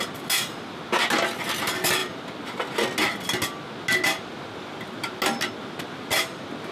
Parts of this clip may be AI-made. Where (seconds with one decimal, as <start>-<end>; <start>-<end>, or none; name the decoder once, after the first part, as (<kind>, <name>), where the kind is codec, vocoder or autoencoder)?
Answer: none